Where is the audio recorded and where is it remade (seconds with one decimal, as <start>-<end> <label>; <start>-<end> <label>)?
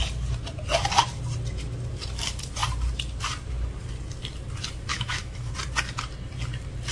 0.0-4.9 recorded; 4.9-5.5 remade; 5.5-6.9 recorded